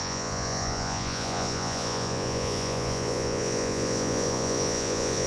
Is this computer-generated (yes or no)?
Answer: yes